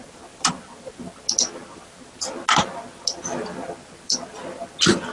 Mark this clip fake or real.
real